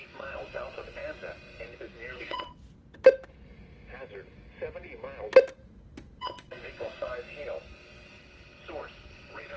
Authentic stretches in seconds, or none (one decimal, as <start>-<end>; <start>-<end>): 1.0-2.2; 2.6-6.2; 7.1-9.1